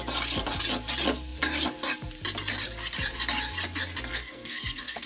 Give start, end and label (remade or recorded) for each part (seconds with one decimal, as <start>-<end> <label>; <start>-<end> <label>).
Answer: 0.0-4.1 recorded; 4.1-5.1 remade